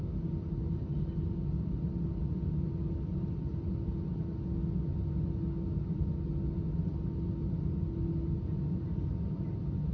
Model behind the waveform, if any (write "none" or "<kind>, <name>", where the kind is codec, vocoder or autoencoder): none